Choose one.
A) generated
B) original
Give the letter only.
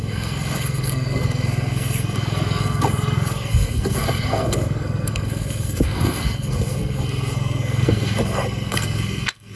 A